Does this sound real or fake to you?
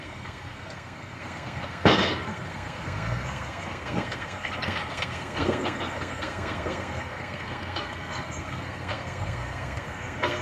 fake